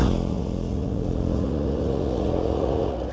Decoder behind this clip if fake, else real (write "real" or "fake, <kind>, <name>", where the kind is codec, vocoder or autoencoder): fake, vocoder, Vocos